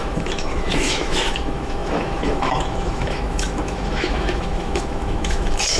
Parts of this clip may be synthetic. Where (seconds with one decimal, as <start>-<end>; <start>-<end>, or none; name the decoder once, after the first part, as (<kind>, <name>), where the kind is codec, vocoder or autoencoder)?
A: 0.0-5.8 (autoencoder, DAC-VAE)